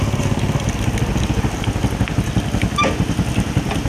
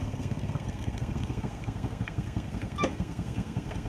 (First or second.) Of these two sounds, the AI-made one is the second